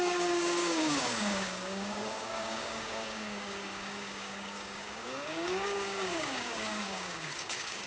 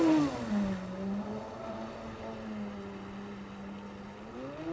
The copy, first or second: first